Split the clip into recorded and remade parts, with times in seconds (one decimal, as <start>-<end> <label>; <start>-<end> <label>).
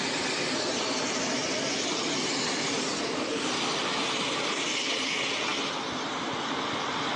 0.0-1.4 recorded; 1.4-5.1 remade; 5.1-7.2 recorded